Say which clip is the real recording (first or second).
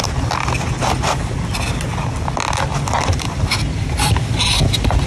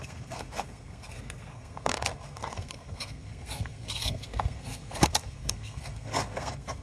first